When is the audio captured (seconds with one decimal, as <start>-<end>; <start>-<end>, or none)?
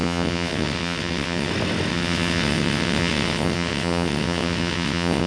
1.5-1.9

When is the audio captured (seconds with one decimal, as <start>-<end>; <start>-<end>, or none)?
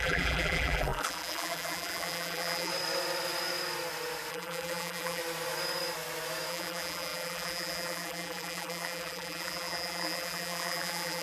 2.7-4.3; 5.2-6.5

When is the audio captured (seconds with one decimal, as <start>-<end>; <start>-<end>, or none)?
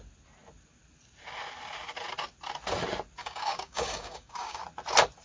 0.0-3.2; 4.6-5.2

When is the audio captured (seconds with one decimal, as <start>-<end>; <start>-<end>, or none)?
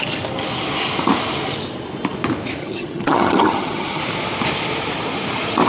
0.0-2.6; 4.0-5.7